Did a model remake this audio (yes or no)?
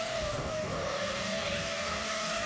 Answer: yes